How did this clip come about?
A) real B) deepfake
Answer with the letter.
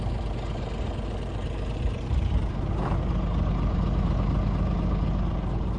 A